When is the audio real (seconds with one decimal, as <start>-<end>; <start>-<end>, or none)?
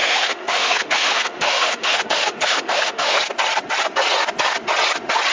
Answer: 3.2-5.3